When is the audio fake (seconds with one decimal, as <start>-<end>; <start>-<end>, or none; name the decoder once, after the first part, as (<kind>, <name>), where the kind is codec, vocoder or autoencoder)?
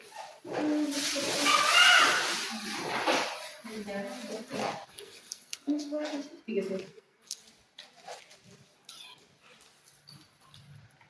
4.6-6.2 (codec, SNAC); 6.8-7.4